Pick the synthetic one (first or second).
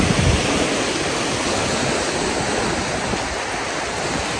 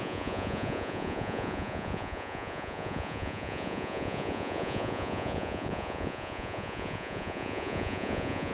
second